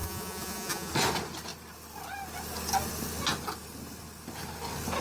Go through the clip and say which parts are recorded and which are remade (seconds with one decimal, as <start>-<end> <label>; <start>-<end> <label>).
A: 0.0-0.9 remade; 0.9-5.0 recorded